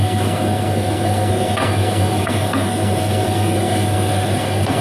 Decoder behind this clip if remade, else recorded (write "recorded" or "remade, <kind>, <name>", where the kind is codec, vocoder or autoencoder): remade, codec, SNAC